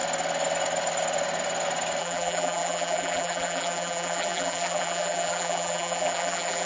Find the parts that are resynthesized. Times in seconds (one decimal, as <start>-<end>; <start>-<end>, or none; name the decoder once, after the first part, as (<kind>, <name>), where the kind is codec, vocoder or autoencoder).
2.0-6.7 (vocoder, BigVGAN v2)

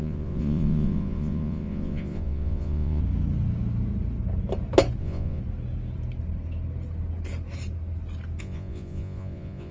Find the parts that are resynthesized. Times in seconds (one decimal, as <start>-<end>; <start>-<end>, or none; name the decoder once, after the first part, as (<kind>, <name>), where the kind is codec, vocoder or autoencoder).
0.0-3.0 (vocoder, Vocos); 5.0-5.4; 8.4-9.7

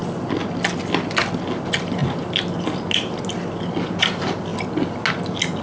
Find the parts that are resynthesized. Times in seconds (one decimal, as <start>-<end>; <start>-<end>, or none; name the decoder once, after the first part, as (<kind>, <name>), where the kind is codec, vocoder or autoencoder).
none

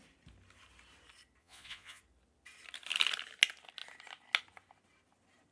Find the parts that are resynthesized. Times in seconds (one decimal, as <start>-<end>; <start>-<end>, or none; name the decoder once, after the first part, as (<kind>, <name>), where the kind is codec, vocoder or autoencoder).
1.4-2.0 (vocoder, Vocos)

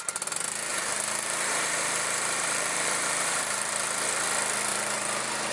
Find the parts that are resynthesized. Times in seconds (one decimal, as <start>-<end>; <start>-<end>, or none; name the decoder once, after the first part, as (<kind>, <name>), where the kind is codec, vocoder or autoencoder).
0.7-3.7 (vocoder, BigVGAN v2); 4.7-5.5

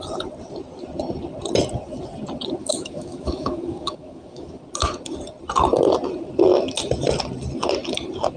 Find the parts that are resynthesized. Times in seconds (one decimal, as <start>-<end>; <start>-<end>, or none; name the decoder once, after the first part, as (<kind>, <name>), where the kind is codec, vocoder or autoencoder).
2.6-4.6 (autoencoder, DAC-VAE)

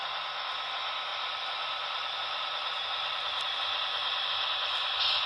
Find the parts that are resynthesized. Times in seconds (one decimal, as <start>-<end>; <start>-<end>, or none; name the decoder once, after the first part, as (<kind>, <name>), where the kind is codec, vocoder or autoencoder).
1.1-4.3 (vocoder, BigVGAN v2)

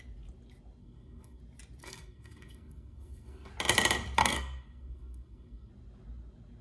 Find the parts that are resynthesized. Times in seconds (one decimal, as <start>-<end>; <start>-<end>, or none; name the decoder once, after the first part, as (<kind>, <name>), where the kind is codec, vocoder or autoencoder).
0.8-1.4 (codec, SNAC); 1.8-3.5; 4.2-5.7